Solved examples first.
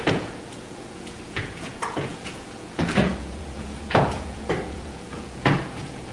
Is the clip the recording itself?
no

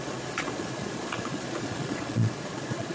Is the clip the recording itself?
no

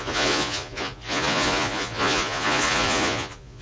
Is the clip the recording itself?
no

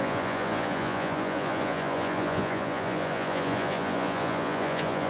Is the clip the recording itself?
no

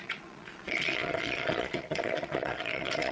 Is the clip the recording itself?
no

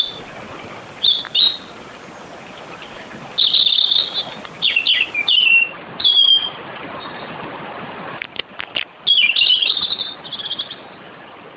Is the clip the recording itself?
yes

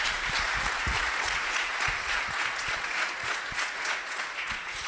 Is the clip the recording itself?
no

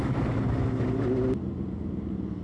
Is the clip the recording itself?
yes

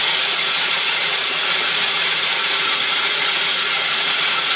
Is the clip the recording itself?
no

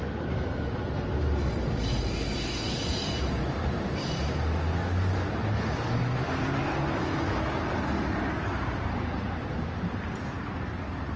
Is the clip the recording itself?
yes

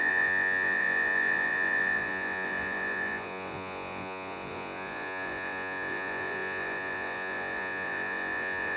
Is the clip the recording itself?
no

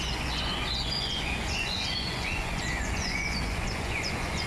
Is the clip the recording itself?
no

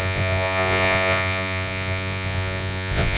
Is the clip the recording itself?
no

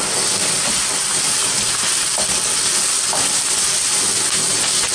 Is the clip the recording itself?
yes